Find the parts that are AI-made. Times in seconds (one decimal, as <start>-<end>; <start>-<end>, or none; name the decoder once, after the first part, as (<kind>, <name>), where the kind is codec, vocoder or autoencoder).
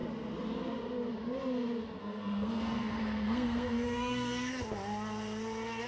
2.0-4.6 (codec, SNAC)